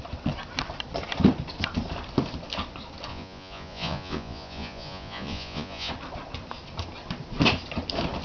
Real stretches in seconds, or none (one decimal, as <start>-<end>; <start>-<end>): 0.0-3.1; 5.9-8.2